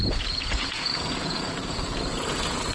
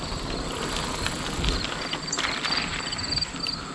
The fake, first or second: first